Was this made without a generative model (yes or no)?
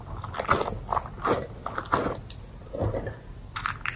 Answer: yes